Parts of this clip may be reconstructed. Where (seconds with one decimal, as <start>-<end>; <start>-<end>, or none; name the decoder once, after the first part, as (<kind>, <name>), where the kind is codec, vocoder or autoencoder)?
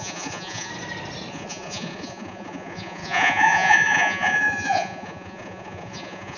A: 0.0-0.7 (vocoder, Vocos); 1.3-6.4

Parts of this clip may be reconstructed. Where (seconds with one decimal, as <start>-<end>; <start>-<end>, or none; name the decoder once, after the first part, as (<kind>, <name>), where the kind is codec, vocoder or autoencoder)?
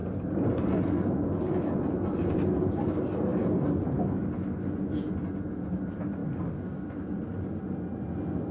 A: none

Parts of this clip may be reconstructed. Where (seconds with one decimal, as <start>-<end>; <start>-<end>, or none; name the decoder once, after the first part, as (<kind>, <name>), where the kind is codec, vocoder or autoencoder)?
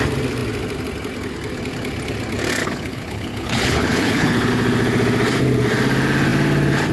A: 2.6-4.5 (codec, HILCodec)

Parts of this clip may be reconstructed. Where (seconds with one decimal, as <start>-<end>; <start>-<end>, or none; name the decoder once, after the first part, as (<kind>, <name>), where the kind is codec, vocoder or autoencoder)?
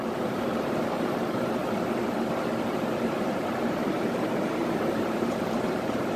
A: 0.0-1.6 (vocoder, BigVGAN v2); 3.3-6.2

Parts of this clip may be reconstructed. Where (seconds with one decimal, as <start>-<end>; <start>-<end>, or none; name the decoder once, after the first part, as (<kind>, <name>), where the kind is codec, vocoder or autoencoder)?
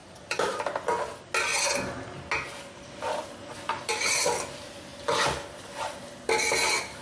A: 0.0-0.6 (vocoder, BigVGAN v2)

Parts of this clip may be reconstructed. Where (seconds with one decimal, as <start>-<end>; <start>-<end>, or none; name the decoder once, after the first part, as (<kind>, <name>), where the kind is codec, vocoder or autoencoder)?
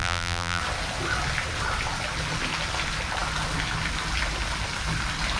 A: 0.0-0.6 (vocoder, BigVGAN v2)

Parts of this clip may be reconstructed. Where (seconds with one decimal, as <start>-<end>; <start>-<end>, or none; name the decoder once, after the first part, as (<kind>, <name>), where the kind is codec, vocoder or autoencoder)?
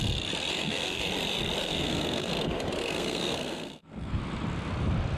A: 0.5-1.1 (codec, SNAC); 1.6-2.3; 2.8-4.2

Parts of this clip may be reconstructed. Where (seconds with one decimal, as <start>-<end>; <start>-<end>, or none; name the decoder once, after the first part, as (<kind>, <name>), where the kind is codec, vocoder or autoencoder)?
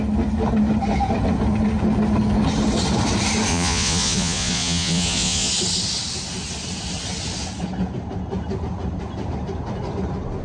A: 3.5-5.5 (vocoder, Vocos)